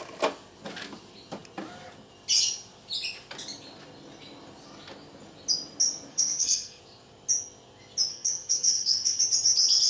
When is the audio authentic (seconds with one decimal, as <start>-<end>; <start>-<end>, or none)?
0.0-6.1; 6.8-8.1; 9.2-9.9